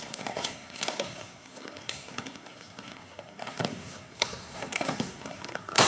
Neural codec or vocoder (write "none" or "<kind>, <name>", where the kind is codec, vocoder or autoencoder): codec, SNAC